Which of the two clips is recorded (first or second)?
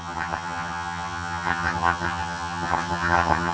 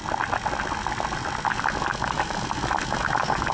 second